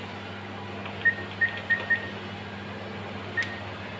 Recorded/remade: recorded